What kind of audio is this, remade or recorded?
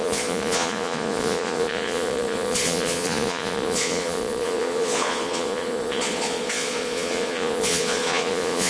remade